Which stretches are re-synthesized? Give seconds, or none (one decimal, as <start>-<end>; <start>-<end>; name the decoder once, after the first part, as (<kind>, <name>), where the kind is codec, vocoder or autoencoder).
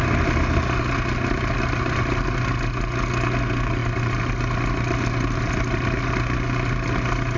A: none